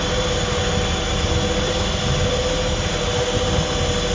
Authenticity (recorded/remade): recorded